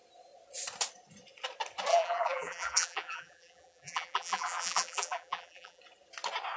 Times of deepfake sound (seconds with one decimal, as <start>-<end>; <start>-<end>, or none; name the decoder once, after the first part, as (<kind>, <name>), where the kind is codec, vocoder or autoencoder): 1.9-5.8 (vocoder, BigVGAN v2)

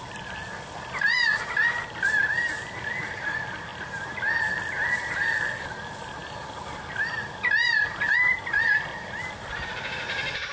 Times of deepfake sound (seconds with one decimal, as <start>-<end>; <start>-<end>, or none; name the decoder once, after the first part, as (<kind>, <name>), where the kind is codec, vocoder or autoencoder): 0.0-10.5 (vocoder, BigVGAN v2)

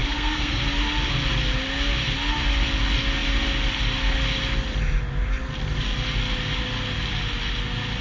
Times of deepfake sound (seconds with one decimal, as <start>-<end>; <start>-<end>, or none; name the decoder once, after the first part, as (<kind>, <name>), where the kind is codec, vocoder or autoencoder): 0.0-0.6 (codec, SNAC)

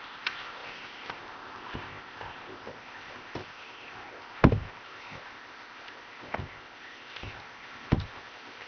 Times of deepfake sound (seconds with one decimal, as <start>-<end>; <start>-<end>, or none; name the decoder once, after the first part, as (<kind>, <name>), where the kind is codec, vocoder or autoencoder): 0.0-8.7 (codec, ZipCodec)

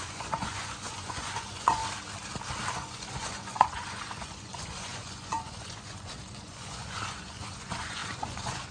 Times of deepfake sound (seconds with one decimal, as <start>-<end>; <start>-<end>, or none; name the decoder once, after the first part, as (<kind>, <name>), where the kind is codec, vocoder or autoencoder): 0.0-1.8 (vocoder, Vocos); 2.7-8.7

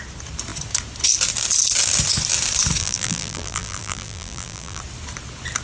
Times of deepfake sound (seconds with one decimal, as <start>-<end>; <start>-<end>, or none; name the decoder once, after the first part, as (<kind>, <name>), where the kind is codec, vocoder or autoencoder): 2.8-4.8 (vocoder, BigVGAN v2)